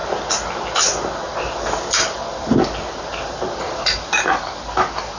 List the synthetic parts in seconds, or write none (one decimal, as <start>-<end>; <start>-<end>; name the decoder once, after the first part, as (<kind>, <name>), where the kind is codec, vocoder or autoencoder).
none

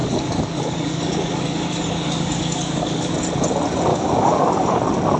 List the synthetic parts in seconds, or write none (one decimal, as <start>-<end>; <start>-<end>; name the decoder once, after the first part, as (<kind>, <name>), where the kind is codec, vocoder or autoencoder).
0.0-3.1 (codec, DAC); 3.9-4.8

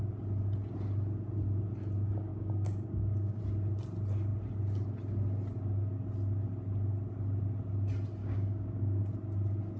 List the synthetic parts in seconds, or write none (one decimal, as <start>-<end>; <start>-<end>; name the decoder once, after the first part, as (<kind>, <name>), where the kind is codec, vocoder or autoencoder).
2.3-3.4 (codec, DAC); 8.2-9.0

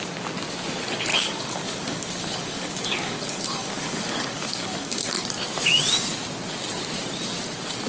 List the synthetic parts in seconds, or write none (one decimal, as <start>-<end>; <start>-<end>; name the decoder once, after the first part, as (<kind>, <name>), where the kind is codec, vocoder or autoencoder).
1.1-5.2 (codec, DAC)

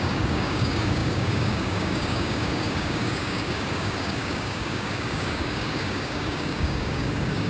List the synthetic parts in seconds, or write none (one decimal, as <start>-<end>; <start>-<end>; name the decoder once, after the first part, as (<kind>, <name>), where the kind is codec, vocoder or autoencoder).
0.0-7.5 (codec, DAC)

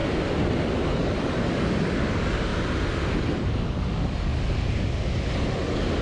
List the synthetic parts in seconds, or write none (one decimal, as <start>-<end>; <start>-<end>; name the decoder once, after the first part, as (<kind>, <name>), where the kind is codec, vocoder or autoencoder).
0.9-2.5 (codec, DAC); 3.2-4.3; 5.6-6.0

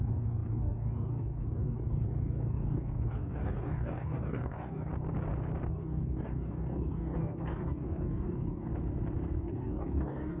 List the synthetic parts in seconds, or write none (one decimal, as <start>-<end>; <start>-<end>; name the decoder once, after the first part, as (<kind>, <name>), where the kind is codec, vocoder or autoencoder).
0.0-4.9 (codec, DAC); 5.7-8.7; 9.4-10.4